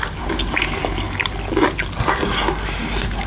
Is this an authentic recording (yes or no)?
yes